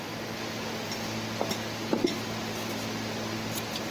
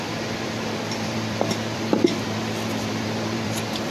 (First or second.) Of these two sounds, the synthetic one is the second